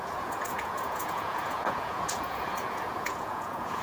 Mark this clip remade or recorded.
remade